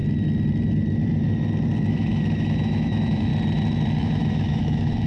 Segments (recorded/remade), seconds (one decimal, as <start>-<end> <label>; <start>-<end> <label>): 0.0-1.9 recorded; 1.9-3.3 remade; 3.3-4.0 recorded; 4.0-5.1 remade